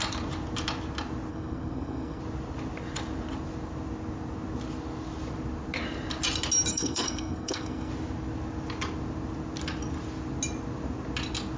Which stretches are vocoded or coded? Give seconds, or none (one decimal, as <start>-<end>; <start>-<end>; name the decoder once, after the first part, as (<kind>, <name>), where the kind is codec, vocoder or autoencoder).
1.3-2.2 (codec, SNAC); 6.7-7.9